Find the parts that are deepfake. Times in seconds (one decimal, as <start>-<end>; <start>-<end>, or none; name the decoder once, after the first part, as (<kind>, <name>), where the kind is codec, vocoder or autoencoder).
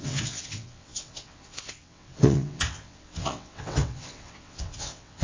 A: 0.0-5.2 (vocoder, WaveNeXt)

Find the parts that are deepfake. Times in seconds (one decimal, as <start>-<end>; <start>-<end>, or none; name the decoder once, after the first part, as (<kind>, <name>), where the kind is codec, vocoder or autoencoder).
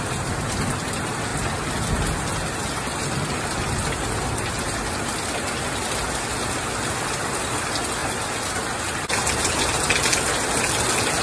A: none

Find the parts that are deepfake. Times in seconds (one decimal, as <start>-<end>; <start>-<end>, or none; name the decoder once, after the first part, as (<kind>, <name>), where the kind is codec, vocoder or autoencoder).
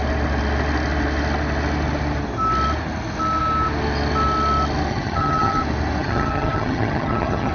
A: 4.9-5.6 (vocoder, HiFi-GAN); 6.0-7.5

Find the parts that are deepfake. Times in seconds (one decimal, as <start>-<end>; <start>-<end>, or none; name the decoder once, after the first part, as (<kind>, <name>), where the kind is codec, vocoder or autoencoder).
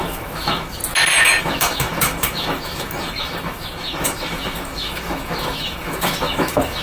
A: 0.0-0.8 (autoencoder, DAC-VAE); 1.4-6.8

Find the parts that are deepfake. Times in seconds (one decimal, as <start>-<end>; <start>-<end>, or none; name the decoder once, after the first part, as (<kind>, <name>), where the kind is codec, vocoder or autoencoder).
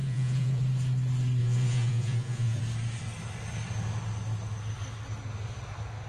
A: 0.0-0.6 (vocoder, Vocos); 1.4-2.6